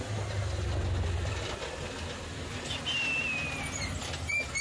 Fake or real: real